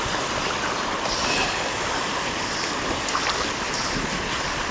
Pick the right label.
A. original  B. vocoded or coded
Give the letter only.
A